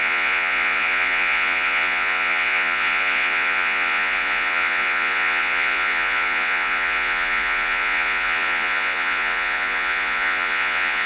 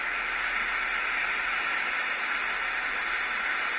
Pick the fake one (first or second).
first